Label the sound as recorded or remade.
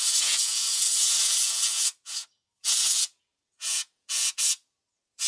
remade